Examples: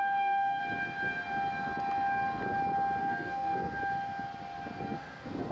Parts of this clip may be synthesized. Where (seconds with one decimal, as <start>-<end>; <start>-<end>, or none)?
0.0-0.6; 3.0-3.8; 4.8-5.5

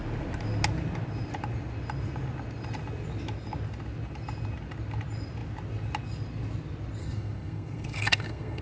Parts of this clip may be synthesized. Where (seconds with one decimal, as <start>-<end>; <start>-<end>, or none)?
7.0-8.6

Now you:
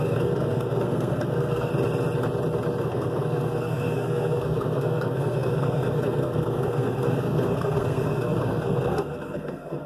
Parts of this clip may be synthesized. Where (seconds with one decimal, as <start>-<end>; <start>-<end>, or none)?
0.0-1.7; 2.8-9.9

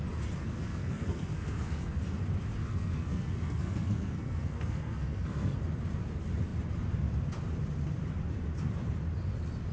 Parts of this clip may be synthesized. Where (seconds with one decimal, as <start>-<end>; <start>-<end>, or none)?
0.4-2.0; 2.6-5.6